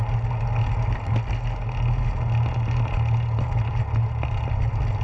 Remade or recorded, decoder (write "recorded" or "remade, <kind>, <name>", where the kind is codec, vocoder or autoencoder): recorded